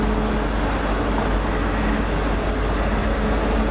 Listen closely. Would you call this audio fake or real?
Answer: real